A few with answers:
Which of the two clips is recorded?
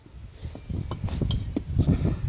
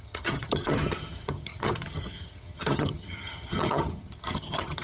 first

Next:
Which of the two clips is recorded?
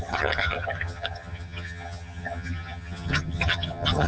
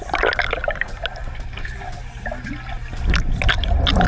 second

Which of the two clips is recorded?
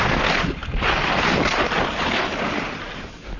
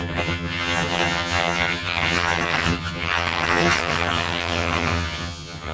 first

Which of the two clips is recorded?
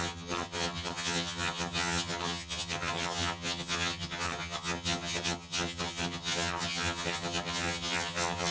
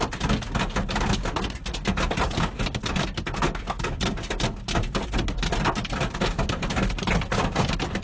second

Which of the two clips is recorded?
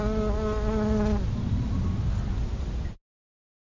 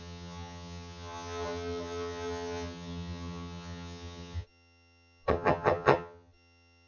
first